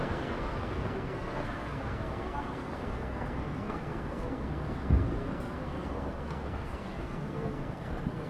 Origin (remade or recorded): remade